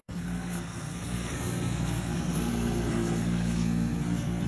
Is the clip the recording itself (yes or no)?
no